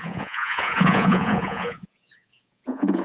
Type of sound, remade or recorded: remade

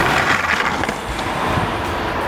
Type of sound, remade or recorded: remade